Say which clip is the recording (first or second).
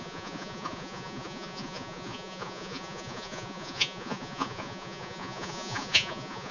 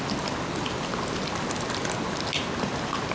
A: second